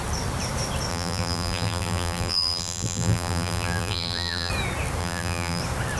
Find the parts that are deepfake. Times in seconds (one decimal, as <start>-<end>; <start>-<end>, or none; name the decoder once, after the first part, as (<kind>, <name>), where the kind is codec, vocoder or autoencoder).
0.9-4.5 (vocoder, BigVGAN v2); 5.0-5.6